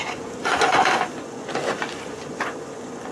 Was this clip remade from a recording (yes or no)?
yes